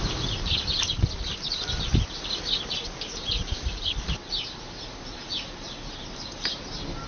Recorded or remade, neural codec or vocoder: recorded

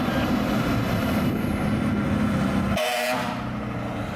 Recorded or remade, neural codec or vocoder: recorded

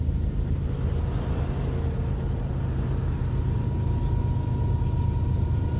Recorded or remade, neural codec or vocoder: recorded